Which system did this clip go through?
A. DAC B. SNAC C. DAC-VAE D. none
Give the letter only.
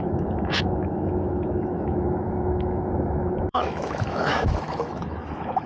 C